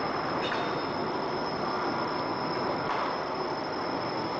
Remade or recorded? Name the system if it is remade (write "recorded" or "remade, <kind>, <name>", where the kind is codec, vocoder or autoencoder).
recorded